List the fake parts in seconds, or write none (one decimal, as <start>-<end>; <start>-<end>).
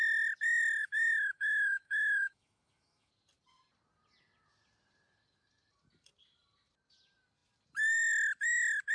0.8-3.1